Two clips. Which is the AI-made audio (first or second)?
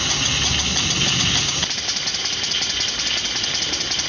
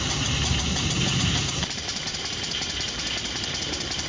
second